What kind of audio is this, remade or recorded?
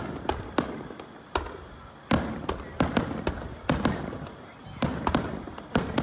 recorded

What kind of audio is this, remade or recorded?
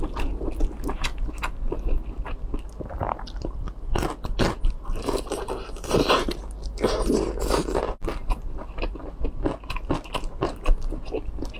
recorded